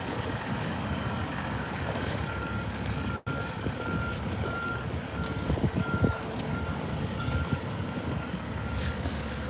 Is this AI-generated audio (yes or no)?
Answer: yes